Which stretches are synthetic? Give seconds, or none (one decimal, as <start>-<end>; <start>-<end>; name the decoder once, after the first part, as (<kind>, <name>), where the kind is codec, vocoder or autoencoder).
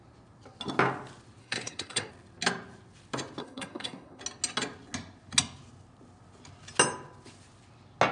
1.4-2.1 (codec, SNAC); 3.4-4.2